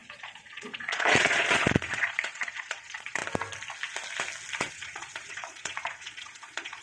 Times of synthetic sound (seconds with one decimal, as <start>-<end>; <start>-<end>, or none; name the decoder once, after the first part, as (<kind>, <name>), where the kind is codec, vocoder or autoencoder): 0.0-3.2 (vocoder, Vocos); 4.7-6.8